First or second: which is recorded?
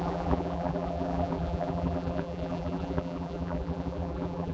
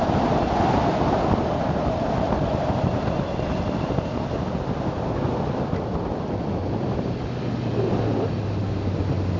second